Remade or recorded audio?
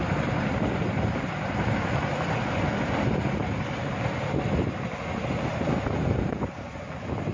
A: recorded